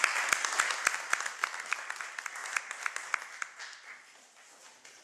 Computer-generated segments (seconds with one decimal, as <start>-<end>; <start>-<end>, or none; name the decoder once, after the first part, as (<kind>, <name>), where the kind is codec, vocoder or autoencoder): none

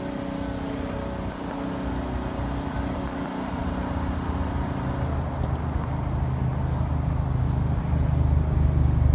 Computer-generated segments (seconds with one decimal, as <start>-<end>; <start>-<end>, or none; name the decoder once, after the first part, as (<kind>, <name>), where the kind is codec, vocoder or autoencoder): none

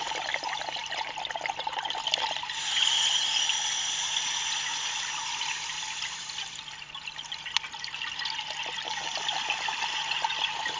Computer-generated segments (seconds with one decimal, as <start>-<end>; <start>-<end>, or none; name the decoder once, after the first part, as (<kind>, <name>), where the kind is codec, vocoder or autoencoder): 0.8-1.3 (vocoder, BigVGAN v2); 4.7-6.9

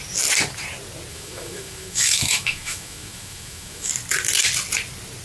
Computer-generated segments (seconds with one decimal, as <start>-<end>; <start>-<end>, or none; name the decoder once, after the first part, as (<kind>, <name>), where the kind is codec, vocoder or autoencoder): 1.1-3.9 (autoencoder, DAC-VAE)

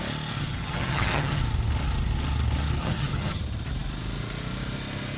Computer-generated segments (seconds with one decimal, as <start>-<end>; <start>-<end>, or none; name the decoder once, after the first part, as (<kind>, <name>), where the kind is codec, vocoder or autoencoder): 0.4-1.4 (vocoder, HiFi-GAN); 2.8-3.4

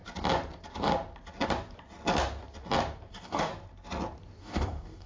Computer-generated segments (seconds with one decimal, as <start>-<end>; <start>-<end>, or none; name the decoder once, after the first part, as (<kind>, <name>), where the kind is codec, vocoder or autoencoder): 3.1-3.5 (codec, DAC); 4.4-5.1

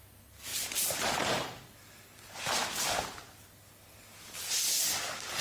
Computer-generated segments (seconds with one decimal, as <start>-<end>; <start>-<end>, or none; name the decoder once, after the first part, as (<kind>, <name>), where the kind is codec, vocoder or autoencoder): none